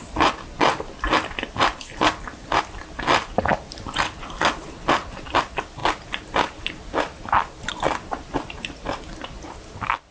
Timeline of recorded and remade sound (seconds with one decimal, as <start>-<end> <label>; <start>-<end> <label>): 0.0-10.1 recorded